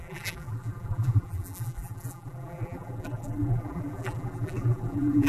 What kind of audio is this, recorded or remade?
remade